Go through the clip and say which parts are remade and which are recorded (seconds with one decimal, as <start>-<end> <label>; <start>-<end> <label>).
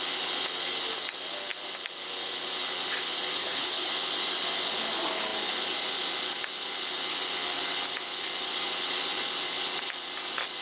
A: 0.0-3.4 recorded; 3.4-3.9 remade; 3.9-10.6 recorded